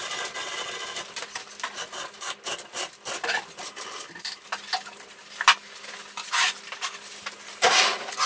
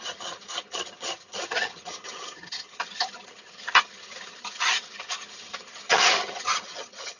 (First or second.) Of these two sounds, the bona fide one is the first